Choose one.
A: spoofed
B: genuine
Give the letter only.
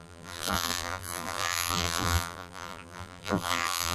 A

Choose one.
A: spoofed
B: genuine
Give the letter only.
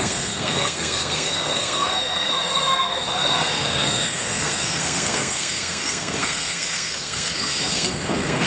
A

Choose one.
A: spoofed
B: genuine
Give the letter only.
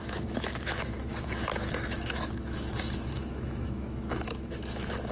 A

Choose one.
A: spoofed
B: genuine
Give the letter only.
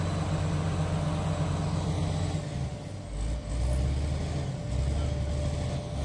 B